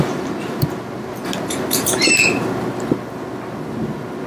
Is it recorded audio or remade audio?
recorded